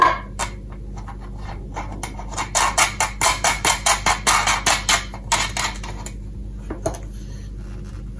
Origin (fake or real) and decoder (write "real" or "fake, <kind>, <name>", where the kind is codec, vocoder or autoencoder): real